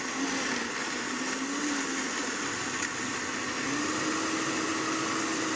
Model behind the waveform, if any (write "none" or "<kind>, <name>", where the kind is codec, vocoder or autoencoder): none